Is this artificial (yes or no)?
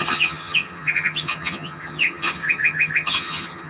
yes